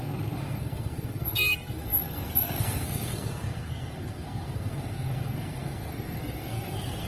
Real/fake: fake